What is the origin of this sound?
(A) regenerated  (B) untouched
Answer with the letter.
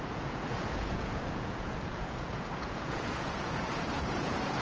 A